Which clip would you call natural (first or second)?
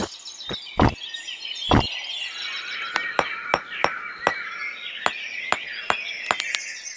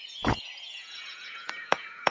first